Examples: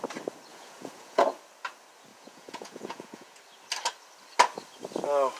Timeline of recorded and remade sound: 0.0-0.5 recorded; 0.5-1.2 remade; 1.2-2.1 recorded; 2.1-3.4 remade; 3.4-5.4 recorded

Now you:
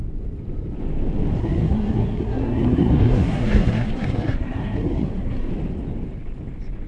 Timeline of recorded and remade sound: 0.0-1.4 recorded; 1.4-5.5 remade; 5.5-6.9 recorded

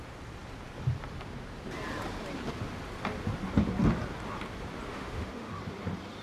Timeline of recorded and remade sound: 0.0-4.9 recorded; 4.9-5.5 remade; 5.5-6.2 recorded

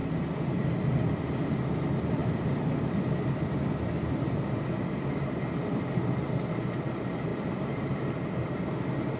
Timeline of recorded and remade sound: 0.0-2.2 recorded; 2.2-3.1 remade; 3.1-7.3 recorded; 7.3-8.1 remade; 8.1-9.2 recorded

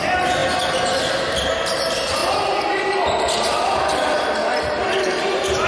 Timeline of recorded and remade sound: 0.0-2.2 recorded; 2.2-5.7 remade

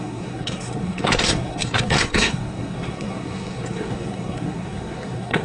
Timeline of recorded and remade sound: 0.0-5.4 remade

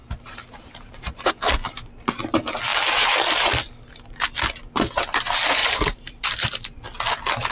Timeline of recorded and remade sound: 0.0-1.3 remade; 1.3-5.6 recorded; 5.6-6.8 remade; 6.8-7.5 recorded

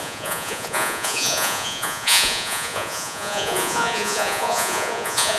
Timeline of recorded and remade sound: 0.0-5.4 remade